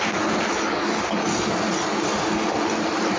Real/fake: real